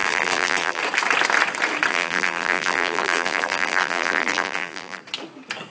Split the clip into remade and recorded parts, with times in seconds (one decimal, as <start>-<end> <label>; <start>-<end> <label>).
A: 0.0-0.8 remade; 0.8-1.9 recorded; 1.9-5.0 remade; 5.0-5.7 recorded